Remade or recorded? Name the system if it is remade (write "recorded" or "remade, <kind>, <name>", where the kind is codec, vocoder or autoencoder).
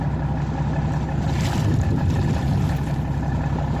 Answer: recorded